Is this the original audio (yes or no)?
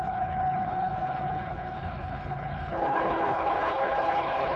no